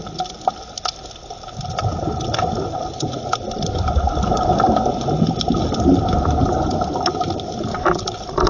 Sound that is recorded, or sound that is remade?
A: recorded